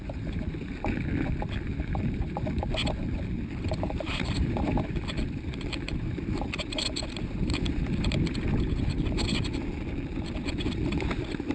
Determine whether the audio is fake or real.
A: fake